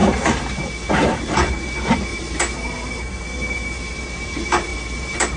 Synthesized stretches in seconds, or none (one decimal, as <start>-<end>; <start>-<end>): 0.0-5.4